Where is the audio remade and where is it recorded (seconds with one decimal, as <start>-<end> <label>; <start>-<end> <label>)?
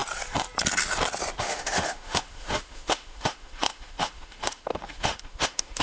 0.0-1.4 recorded; 1.4-5.8 remade